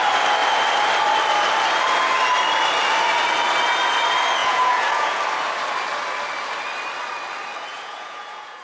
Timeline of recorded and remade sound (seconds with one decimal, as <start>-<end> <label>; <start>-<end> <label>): 0.0-4.4 recorded; 4.4-5.2 remade; 5.2-7.7 recorded; 7.7-8.6 remade

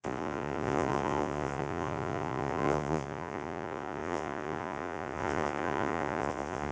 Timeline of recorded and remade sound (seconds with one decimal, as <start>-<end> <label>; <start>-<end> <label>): 0.0-6.7 remade

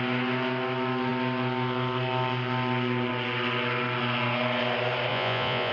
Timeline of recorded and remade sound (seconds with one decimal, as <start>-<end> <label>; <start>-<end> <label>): 0.0-5.1 recorded; 5.1-5.7 remade

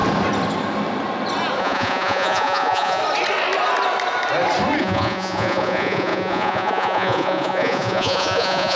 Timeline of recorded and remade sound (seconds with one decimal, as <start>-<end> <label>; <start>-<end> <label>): 0.0-1.6 recorded; 1.6-3.0 remade; 3.0-4.8 recorded; 4.8-8.8 remade

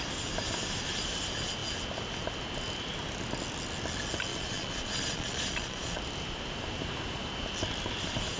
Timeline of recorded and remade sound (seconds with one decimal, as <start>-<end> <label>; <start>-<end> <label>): 0.0-4.3 recorded; 4.3-6.0 remade; 6.0-8.4 recorded

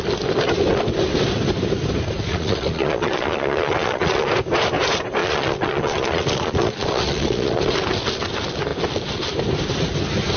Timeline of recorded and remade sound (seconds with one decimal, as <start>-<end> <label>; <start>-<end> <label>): 0.0-2.3 recorded; 2.3-4.3 remade; 4.3-5.2 recorded; 5.2-7.6 remade; 7.6-10.4 recorded

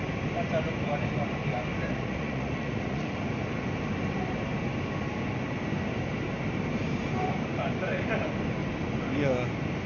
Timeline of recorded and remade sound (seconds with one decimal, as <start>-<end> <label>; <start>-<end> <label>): 0.0-1.9 recorded; 1.9-3.2 remade; 3.2-9.9 recorded

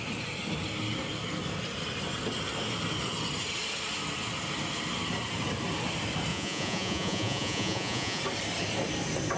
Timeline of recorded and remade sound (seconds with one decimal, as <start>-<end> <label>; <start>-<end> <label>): 0.0-6.3 recorded; 6.3-8.2 remade; 8.2-9.4 recorded